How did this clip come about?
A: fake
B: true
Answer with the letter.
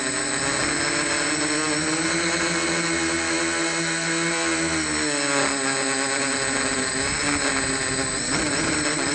B